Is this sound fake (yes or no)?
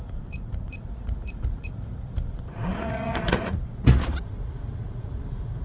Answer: yes